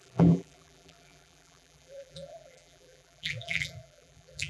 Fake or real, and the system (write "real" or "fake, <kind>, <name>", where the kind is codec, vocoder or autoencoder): fake, vocoder, BigVGAN v2